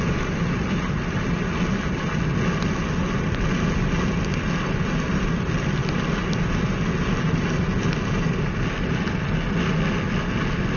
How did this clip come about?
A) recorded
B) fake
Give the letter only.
A